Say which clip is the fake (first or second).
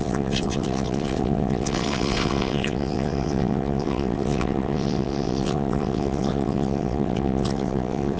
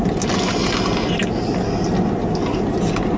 first